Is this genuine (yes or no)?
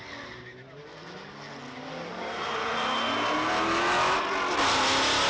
yes